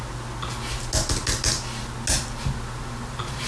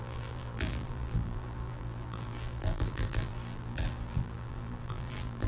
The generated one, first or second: second